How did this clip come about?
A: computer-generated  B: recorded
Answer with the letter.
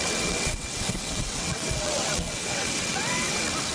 A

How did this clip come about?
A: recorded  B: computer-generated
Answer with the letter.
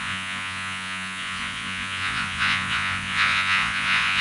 B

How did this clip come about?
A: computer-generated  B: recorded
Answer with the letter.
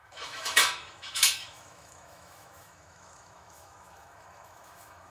A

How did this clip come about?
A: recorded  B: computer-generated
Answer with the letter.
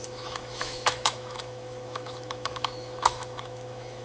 B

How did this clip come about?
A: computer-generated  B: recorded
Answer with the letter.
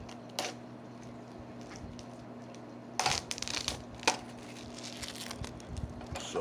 B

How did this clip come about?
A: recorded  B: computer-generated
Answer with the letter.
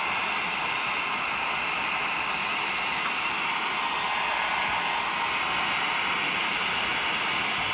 A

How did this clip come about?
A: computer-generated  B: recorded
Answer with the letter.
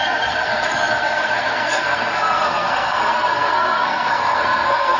A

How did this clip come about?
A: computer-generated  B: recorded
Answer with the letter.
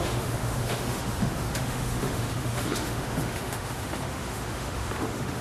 A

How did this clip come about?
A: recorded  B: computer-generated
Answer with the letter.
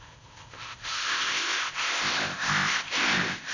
B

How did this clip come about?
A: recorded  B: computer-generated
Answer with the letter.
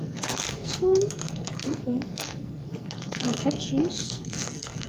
B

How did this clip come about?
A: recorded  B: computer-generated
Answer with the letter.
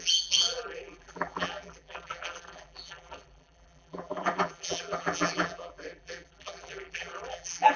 B